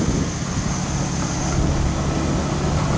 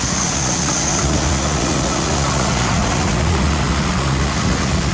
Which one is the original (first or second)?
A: first